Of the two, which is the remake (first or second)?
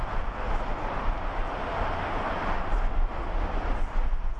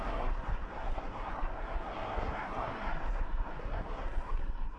second